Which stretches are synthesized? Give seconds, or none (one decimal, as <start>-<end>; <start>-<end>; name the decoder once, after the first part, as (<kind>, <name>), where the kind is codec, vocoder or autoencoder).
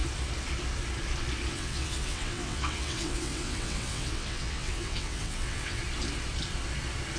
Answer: 1.5-5.8 (vocoder, WaveNeXt)